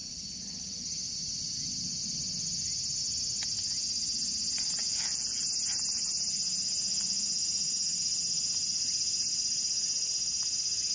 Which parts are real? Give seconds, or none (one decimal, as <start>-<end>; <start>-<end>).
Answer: 0.0-4.8; 5.4-10.9